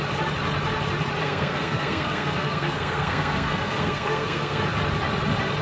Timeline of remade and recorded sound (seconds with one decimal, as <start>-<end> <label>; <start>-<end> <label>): 0.0-1.2 recorded; 1.2-4.6 remade; 4.6-5.6 recorded